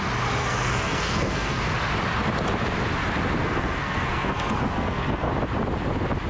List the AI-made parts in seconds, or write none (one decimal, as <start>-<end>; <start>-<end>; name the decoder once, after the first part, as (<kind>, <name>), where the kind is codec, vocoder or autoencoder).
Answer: 0.4-1.6 (codec, SNAC); 3.4-5.3